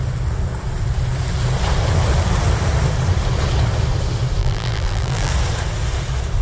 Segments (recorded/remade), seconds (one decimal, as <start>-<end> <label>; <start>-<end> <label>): 0.0-4.4 recorded; 4.4-5.3 remade; 5.3-6.4 recorded